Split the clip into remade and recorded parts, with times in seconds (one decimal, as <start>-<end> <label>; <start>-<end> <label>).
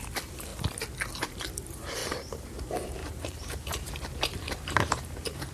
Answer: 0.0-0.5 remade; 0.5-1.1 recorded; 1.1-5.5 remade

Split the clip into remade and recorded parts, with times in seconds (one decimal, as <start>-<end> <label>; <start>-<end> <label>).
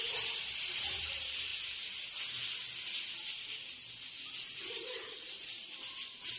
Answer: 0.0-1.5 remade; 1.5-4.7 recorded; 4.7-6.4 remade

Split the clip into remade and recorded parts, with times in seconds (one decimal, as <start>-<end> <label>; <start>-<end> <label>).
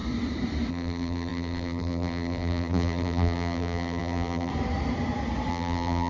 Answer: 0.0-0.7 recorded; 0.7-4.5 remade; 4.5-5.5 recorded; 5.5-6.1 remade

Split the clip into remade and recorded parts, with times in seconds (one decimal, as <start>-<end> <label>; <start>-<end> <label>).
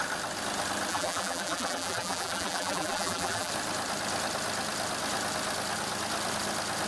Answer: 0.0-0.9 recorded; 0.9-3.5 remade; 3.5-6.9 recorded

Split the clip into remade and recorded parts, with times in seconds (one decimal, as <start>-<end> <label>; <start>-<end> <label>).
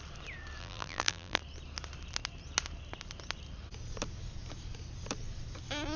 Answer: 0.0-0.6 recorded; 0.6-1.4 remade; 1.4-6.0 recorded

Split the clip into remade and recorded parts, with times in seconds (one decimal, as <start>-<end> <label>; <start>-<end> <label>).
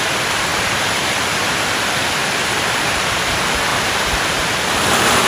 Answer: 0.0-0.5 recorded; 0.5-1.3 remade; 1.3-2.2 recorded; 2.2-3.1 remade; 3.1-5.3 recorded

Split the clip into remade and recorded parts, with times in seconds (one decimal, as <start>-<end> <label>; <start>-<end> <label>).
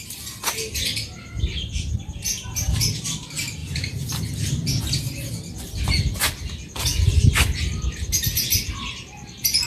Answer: 0.0-9.7 recorded